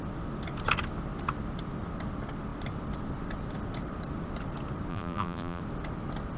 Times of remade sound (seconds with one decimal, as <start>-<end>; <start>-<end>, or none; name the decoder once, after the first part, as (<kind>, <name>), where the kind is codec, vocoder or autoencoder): 4.9-5.6 (vocoder, BigVGAN v2)